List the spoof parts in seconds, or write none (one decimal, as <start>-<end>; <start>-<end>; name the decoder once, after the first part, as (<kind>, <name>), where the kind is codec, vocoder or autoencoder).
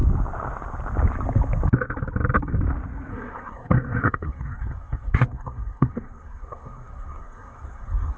3.1-8.2 (codec, SNAC)